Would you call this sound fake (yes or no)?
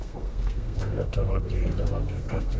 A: yes